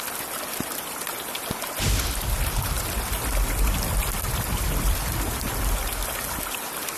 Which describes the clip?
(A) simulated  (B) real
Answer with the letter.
B